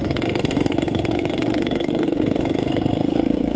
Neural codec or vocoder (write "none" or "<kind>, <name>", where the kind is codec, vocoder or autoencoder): codec, SNAC